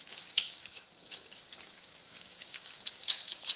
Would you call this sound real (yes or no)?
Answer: no